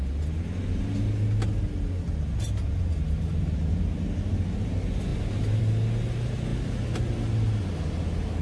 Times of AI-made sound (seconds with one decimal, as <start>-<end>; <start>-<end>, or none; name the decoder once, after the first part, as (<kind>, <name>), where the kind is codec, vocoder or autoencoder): none